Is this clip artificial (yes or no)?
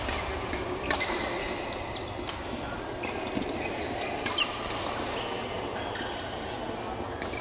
no